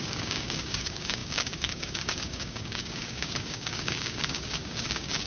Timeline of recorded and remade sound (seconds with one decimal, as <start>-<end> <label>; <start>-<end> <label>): 0.0-5.3 remade